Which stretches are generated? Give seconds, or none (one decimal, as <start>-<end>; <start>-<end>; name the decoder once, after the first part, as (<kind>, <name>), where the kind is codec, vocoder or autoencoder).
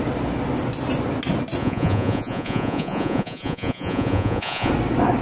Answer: 1.6-4.7 (vocoder, Vocos)